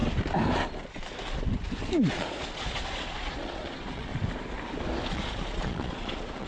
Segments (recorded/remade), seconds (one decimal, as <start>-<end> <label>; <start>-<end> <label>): 0.0-2.1 recorded; 2.1-4.1 remade; 4.1-5.1 recorded; 5.1-6.5 remade